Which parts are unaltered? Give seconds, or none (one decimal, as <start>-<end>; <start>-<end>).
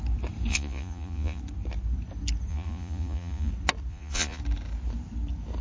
0.0-0.5; 1.4-2.5; 3.5-3.9; 4.4-5.6